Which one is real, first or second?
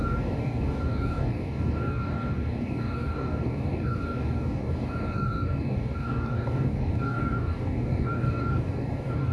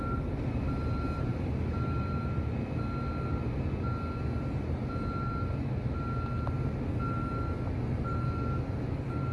second